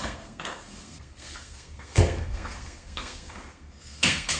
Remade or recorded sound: remade